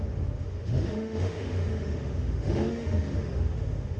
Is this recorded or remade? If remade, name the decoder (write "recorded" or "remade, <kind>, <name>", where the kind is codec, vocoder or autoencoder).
remade, autoencoder, DAC-VAE